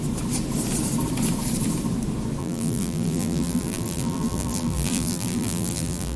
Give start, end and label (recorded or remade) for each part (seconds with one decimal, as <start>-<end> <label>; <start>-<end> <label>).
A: 0.0-2.4 recorded; 2.4-6.2 remade